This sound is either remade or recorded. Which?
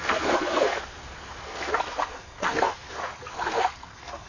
remade